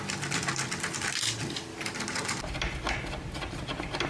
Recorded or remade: recorded